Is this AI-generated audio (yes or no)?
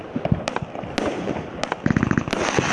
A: no